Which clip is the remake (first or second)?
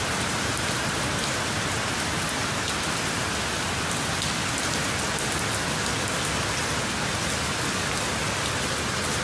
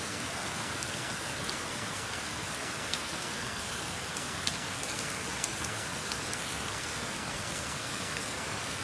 second